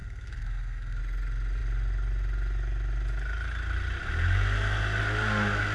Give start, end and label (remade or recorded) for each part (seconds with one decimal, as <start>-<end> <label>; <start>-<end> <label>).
0.0-1.0 remade; 1.0-5.7 recorded